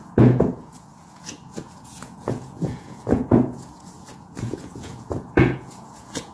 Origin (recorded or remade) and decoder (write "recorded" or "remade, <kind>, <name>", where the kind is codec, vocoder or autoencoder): remade, vocoder, Vocos